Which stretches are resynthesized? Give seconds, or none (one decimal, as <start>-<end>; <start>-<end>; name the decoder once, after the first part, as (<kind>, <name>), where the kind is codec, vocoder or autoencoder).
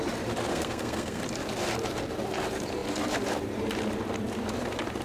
0.5-1.2 (codec, SNAC)